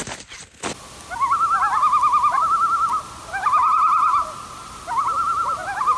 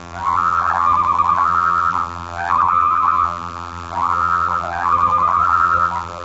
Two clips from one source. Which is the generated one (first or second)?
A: second